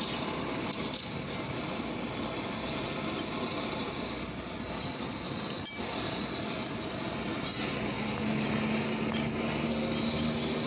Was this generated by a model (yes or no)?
no